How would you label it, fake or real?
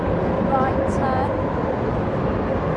real